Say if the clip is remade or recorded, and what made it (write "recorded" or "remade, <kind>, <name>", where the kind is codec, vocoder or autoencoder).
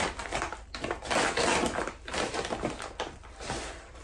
recorded